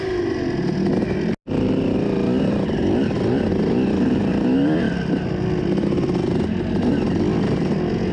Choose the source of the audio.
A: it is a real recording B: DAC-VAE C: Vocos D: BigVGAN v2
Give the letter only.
A